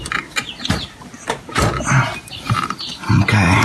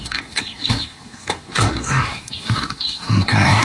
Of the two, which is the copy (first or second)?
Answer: second